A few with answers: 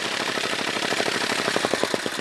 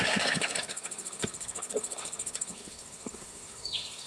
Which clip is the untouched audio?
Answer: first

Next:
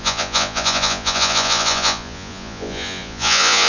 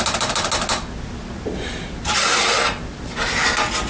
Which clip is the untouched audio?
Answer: second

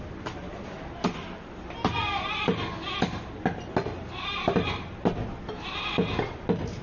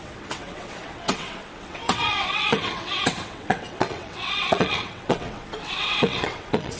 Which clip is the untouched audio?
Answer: first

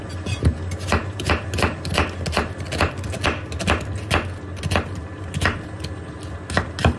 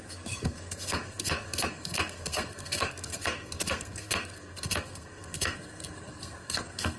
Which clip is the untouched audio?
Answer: first